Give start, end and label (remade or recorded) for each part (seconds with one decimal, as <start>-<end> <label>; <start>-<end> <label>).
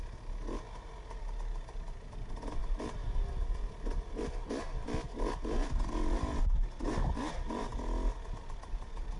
0.0-9.2 recorded